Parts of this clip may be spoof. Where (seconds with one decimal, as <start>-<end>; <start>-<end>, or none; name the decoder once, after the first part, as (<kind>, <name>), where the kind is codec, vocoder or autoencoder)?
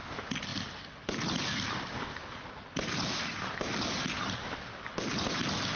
none